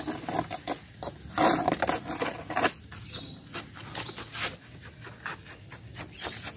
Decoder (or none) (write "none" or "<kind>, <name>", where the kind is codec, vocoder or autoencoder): none